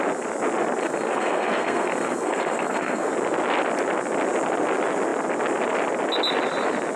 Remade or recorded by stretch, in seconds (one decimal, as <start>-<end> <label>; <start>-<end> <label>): 0.0-0.8 recorded; 0.8-3.1 remade; 3.1-7.0 recorded